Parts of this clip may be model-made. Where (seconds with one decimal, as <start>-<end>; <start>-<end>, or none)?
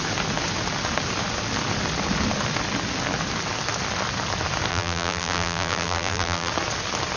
4.7-6.5